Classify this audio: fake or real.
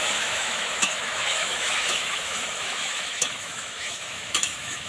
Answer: fake